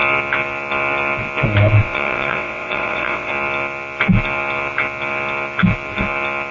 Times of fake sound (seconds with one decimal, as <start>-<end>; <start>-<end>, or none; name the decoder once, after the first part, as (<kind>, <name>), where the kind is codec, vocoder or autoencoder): 1.8-3.3 (vocoder, WaveNeXt)